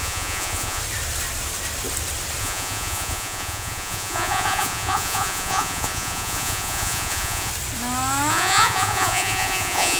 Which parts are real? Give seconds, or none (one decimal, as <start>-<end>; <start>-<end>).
0.8-2.4; 7.5-8.3